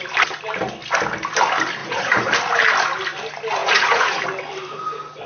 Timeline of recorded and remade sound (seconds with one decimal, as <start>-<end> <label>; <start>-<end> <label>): 0.0-1.8 recorded; 1.8-2.3 remade; 2.3-3.6 recorded; 3.6-4.2 remade; 4.2-5.3 recorded